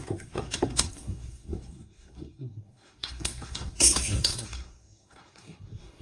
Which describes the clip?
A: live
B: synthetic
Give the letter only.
B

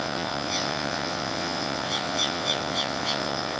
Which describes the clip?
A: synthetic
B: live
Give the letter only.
A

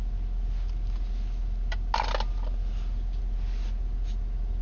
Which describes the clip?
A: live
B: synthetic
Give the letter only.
A